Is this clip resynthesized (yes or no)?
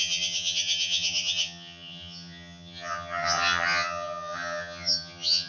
yes